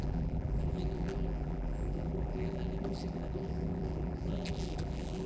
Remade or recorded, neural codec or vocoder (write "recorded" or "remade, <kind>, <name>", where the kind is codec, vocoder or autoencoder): remade, vocoder, BigVGAN v2